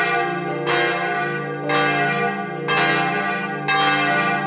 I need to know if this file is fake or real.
real